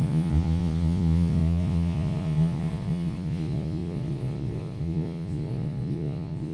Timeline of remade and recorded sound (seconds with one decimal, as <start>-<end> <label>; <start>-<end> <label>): 0.0-6.5 remade

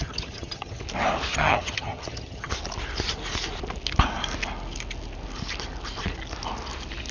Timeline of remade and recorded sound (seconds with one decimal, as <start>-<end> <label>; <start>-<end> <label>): 0.0-0.8 remade; 0.8-1.3 recorded; 1.3-2.5 remade; 2.5-7.1 recorded

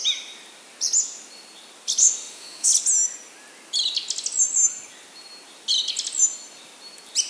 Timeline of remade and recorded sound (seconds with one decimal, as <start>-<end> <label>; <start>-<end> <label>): 0.0-2.0 recorded; 2.0-2.7 remade; 2.7-7.3 recorded

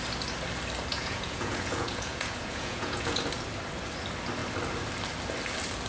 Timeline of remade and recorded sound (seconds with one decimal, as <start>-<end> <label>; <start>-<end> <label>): 0.0-0.9 recorded; 0.9-3.2 remade; 3.2-5.9 recorded